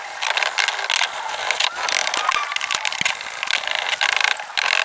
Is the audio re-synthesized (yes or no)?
no